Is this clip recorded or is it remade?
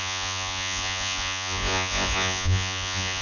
remade